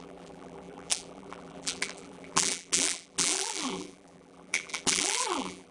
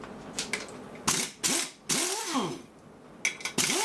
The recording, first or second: second